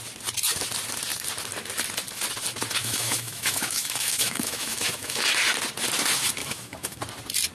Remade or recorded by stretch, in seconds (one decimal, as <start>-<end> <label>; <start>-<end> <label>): 0.0-2.8 recorded; 2.8-5.2 remade; 5.2-6.4 recorded; 6.4-7.0 remade; 7.0-7.5 recorded